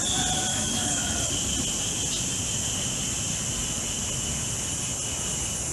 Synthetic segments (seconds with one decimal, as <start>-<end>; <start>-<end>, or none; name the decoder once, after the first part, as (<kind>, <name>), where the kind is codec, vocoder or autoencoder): 0.5-1.3 (codec, DAC)